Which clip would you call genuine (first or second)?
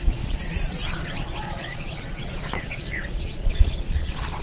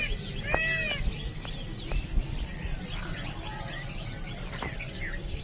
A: second